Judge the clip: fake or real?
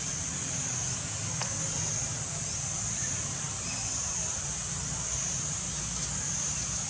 real